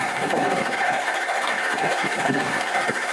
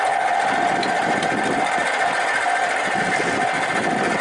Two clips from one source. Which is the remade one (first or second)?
first